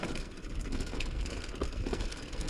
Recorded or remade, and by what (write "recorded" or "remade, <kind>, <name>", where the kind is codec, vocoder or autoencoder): remade, codec, SNAC